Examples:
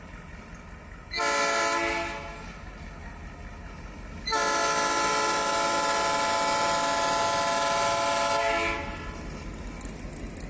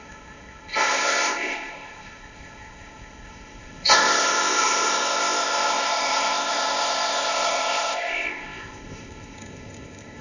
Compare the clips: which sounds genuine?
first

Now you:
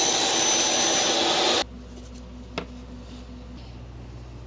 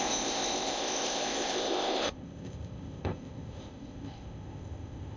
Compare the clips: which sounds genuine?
first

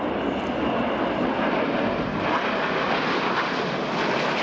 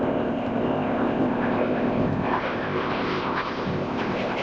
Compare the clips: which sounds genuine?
first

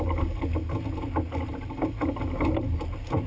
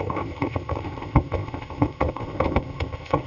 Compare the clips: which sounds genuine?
first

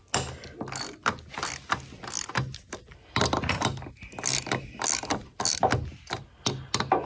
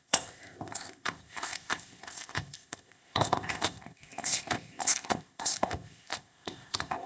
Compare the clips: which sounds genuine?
first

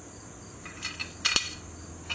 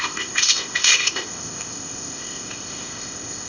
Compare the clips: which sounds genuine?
first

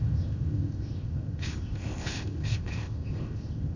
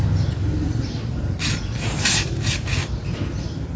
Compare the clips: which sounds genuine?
second